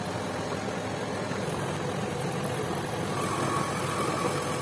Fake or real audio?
real